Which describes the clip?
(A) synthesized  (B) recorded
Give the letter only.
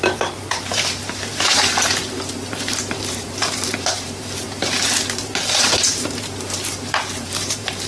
A